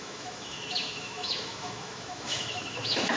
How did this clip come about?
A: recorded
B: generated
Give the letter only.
B